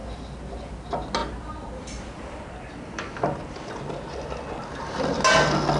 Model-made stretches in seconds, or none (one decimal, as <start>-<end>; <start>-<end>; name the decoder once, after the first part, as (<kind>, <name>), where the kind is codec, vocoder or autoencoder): none